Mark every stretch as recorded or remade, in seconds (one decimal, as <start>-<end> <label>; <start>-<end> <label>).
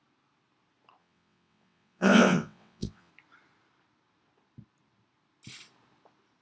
0.0-1.0 recorded; 1.0-3.1 remade; 3.1-6.4 recorded